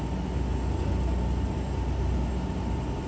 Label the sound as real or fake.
real